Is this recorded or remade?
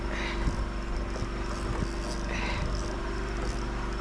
recorded